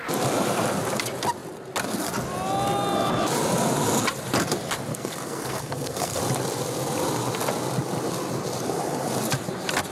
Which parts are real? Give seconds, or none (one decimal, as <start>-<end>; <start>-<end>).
0.0-4.9; 6.2-9.9

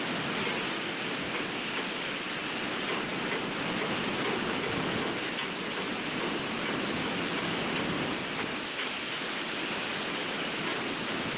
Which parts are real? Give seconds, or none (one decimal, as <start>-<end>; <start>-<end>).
0.0-11.4

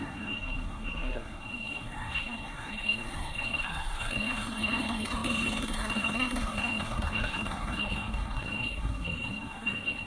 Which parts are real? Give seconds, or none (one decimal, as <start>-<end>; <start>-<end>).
none

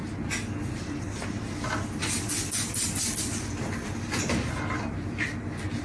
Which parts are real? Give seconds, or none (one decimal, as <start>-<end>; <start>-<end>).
0.0-5.8

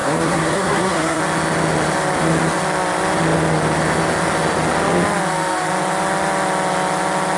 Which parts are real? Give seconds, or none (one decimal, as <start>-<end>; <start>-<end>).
1.2-7.4

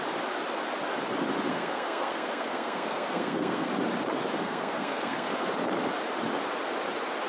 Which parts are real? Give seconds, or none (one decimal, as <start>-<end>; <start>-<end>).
0.0-1.5; 3.7-4.4; 5.5-7.3